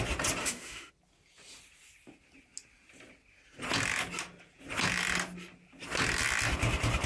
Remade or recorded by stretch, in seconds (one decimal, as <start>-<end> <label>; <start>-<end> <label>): 0.0-0.4 recorded; 0.4-0.9 remade; 0.9-7.1 recorded

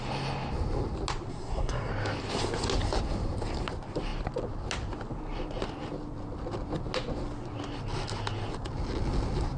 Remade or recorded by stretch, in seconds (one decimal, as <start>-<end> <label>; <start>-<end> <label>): 0.0-1.3 recorded; 1.3-1.9 remade; 1.9-9.6 recorded